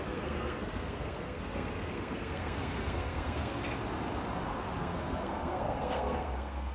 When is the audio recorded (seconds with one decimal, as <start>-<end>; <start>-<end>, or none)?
3.6-4.8

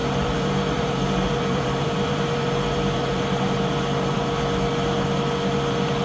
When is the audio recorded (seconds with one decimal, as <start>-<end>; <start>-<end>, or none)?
3.6-6.0

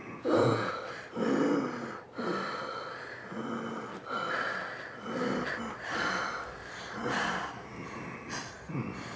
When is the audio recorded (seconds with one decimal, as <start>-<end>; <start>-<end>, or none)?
0.7-9.2

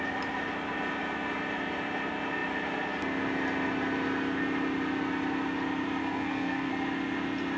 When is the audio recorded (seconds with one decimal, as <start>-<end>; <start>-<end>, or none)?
0.0-6.0; 6.7-7.6